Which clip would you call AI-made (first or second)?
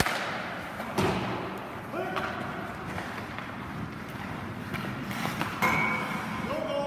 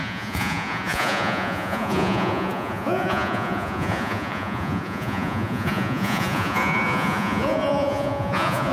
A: second